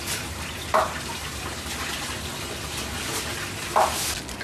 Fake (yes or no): no